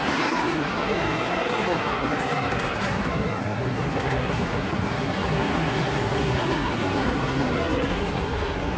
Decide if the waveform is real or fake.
fake